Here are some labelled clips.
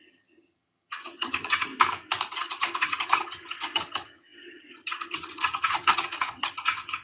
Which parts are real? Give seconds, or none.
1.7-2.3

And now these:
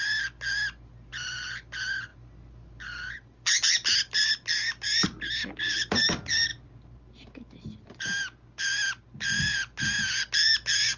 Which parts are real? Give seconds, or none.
0.0-1.1; 1.7-11.0

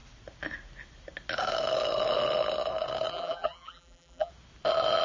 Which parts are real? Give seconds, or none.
0.0-3.1; 4.3-5.0

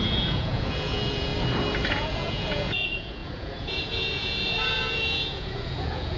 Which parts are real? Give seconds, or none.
1.3-1.9

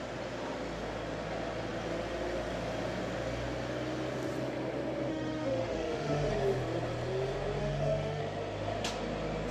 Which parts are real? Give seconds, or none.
0.0-5.1; 6.3-7.6; 8.2-9.5